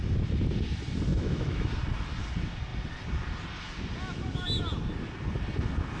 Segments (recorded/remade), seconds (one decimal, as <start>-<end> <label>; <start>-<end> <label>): 0.0-1.1 recorded; 1.1-1.7 remade; 1.7-6.0 recorded